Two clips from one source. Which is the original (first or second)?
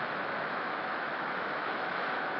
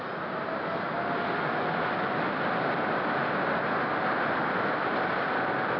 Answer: second